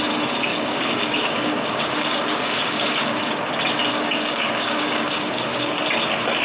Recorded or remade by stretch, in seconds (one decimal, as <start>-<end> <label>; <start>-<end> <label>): 0.0-0.5 recorded; 0.5-3.2 remade; 3.2-3.9 recorded; 3.9-5.8 remade; 5.8-6.4 recorded